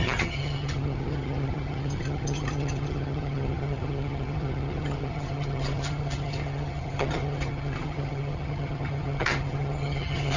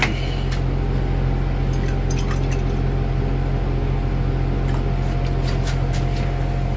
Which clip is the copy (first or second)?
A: first